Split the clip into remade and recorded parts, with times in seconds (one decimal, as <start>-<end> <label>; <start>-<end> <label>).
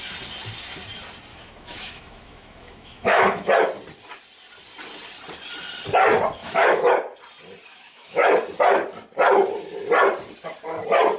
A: 0.0-1.3 recorded; 1.3-3.5 remade; 3.5-6.4 recorded; 6.4-6.9 remade; 6.9-7.7 recorded; 7.7-8.3 remade; 8.3-11.2 recorded